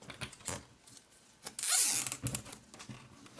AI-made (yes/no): no